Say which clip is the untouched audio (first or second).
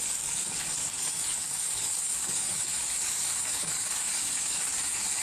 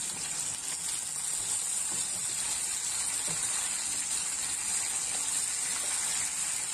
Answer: second